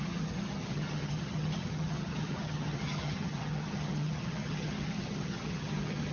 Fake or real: fake